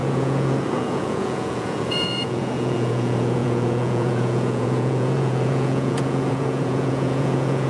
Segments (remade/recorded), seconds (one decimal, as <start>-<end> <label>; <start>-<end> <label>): 0.0-7.7 remade